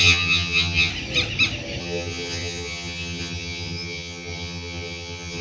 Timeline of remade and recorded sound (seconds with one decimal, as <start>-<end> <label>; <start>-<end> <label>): 0.0-0.9 remade; 0.9-1.8 recorded; 1.8-5.4 remade